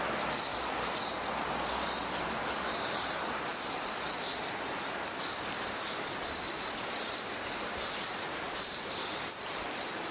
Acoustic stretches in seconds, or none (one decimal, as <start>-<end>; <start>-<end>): 0.0-10.1